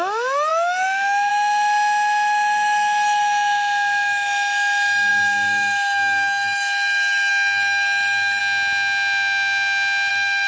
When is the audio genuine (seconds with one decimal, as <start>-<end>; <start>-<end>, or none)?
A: 8.4-10.1